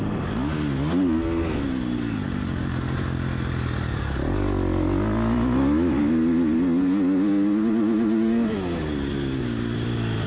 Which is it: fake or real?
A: real